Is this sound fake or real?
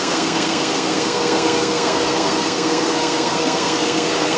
fake